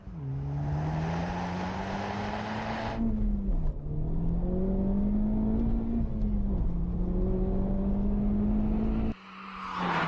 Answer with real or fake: real